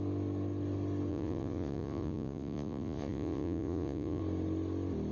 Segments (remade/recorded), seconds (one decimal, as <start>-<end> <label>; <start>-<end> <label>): 0.0-1.1 recorded; 1.1-4.2 remade; 4.2-5.1 recorded